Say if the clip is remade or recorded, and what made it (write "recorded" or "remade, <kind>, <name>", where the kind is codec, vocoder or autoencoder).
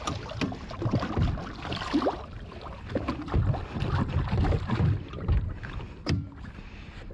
recorded